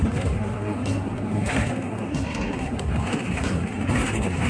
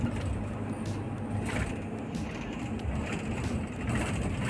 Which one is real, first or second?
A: second